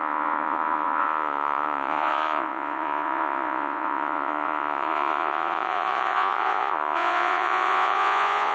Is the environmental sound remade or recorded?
remade